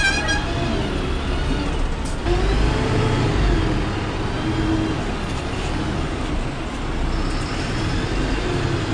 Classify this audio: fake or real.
real